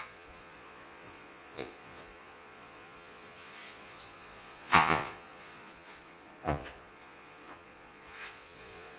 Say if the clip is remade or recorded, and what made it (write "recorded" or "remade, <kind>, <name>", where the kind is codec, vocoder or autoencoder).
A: remade, vocoder, Vocos